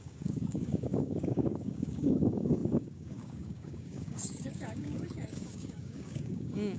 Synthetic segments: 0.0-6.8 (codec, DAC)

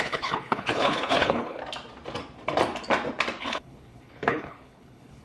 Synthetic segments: 0.0-1.6 (codec, HILCodec); 3.4-5.2

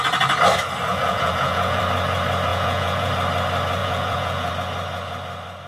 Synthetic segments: 0.9-1.8 (vocoder, Vocos); 2.5-3.1; 3.8-4.5

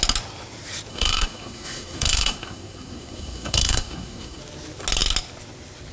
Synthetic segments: 0.9-4.4 (codec, SNAC)

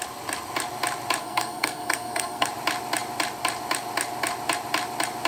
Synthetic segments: 1.2-2.5 (codec, SNAC)

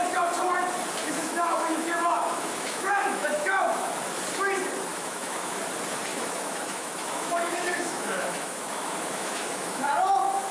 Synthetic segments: 1.0-3.9 (autoencoder, DAC-VAE); 4.9-5.6; 6.1-9.9

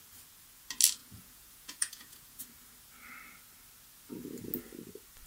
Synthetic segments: 1.0-2.4 (vocoder, Vocos)